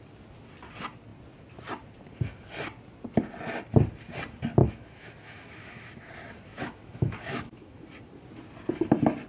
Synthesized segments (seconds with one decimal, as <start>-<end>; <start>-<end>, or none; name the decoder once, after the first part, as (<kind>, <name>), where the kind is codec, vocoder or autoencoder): 4.6-6.1 (autoencoder, DAC-VAE); 6.5-7.8